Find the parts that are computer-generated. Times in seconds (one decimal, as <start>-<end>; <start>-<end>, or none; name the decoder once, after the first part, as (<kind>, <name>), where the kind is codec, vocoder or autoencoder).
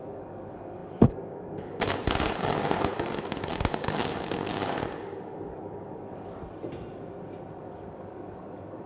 0.0-6.4 (codec, DAC); 7.6-8.9